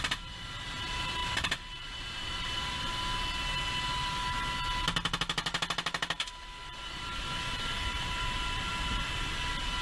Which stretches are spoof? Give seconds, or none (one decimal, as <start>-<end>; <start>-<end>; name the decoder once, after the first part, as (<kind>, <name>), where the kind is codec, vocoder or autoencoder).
1.2-2.9 (vocoder, BigVGAN v2); 7.9-8.7